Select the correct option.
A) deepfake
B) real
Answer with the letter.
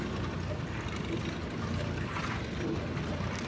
B